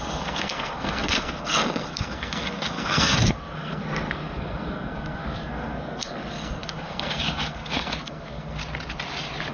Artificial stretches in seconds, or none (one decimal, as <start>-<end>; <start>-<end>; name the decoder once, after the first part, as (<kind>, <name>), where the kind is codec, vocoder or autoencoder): 0.0-8.6 (codec, SNAC)